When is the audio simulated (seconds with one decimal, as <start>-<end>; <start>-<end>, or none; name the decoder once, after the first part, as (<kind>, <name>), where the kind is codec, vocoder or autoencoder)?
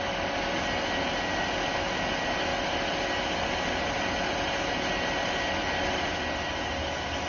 none